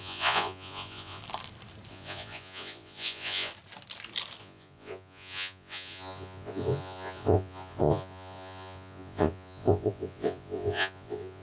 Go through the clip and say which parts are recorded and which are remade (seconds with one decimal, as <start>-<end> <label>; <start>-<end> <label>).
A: 0.0-1.2 remade; 1.2-1.9 recorded; 1.9-3.5 remade; 3.5-4.4 recorded; 4.4-11.4 remade